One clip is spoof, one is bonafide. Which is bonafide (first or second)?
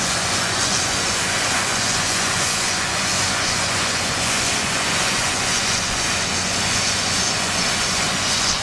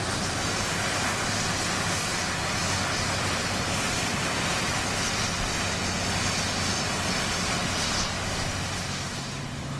second